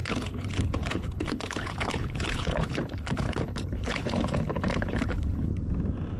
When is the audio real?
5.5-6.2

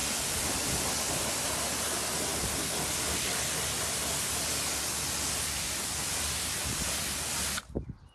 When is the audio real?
0.0-8.1

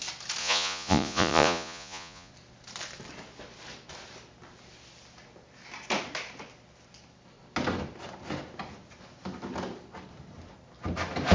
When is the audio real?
0.0-0.4; 2.3-11.3

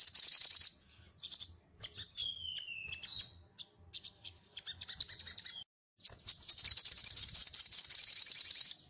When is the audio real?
0.0-8.9

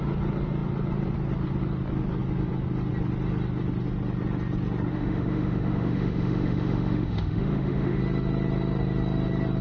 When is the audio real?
0.0-4.9; 8.0-9.6

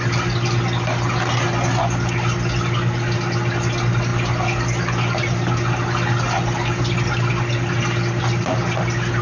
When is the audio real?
0.0-9.2

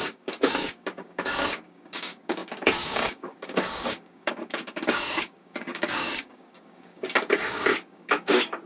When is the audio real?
none